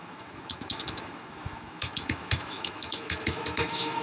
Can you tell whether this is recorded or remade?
remade